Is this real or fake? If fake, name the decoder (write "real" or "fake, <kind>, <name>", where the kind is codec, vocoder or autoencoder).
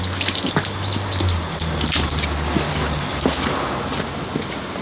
real